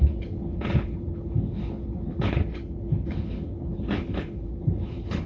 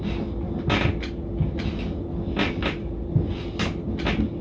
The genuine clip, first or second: second